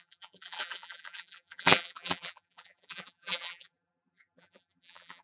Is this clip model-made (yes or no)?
yes